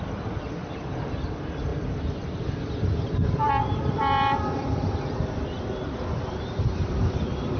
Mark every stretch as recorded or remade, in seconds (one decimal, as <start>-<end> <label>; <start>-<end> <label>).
0.0-7.6 remade